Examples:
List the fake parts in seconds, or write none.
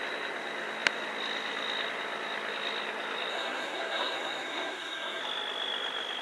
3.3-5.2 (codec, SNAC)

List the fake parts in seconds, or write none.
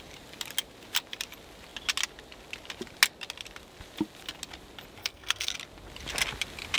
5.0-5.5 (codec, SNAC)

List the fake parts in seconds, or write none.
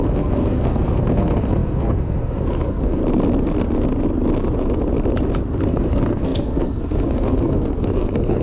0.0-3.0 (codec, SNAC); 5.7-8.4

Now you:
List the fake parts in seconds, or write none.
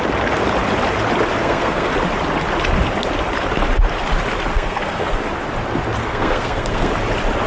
1.4-1.9 (codec, SNAC); 4.5-5.2; 6.0-6.9